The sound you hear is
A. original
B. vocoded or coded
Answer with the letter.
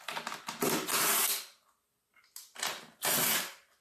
A